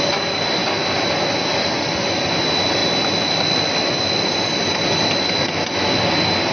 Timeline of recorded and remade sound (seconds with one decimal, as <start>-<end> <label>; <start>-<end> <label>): 0.0-6.5 recorded